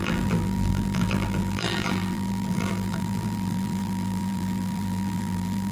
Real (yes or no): no